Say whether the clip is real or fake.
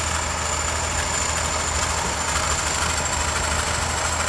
real